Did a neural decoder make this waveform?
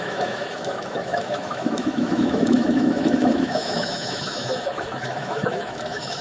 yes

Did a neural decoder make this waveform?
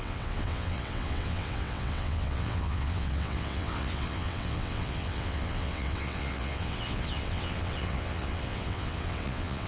yes